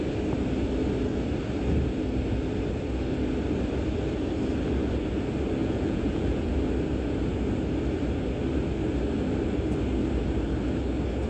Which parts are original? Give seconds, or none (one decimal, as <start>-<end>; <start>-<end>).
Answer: 0.0-5.6; 6.5-11.3